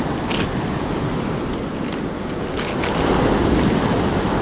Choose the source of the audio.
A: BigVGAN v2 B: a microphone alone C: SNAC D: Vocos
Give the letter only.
B